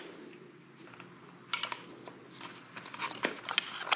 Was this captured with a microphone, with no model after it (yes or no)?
yes